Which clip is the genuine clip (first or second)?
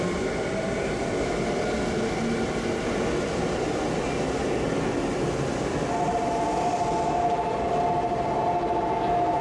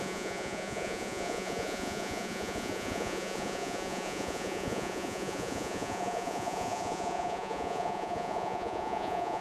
first